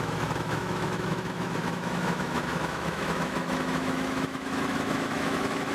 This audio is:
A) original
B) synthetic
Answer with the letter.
B